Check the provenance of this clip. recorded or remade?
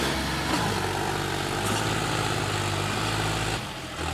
recorded